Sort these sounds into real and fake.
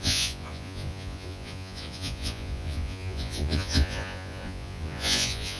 fake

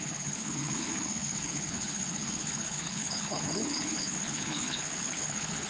fake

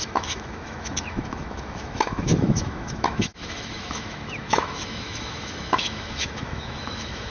fake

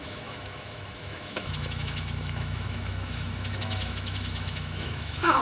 fake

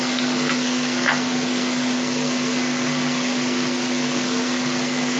fake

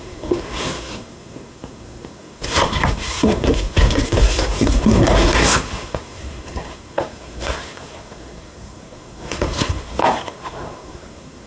fake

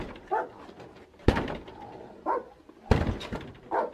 fake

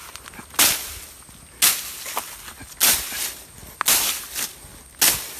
real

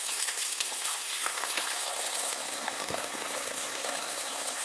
fake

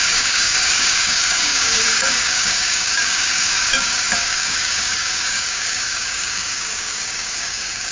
fake